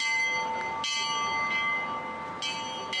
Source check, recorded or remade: recorded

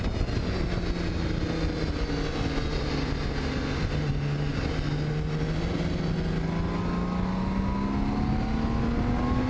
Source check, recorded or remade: recorded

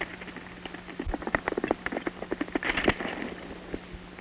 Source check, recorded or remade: recorded